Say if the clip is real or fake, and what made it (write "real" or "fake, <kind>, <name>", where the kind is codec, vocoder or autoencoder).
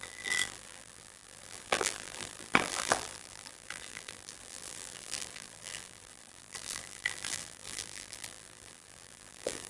fake, vocoder, BigVGAN v2